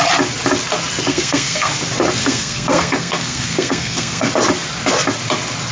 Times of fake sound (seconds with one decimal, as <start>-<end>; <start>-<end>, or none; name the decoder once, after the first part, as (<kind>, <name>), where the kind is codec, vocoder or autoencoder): 1.1-1.7 (codec, SNAC); 2.2-4.3